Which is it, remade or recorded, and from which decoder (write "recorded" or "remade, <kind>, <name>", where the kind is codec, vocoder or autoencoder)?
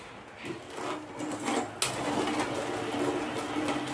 recorded